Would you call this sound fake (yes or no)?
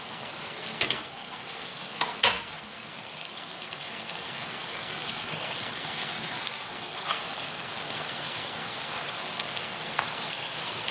yes